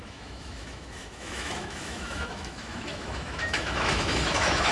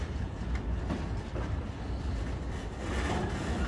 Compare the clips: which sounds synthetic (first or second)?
first